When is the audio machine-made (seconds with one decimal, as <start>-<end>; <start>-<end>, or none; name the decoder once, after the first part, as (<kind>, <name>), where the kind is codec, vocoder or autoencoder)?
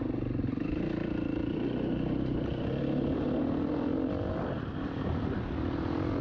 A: none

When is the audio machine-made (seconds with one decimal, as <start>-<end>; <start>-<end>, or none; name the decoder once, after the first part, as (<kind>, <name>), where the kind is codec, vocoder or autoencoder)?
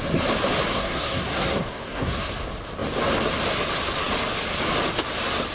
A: 0.7-2.3 (codec, SNAC)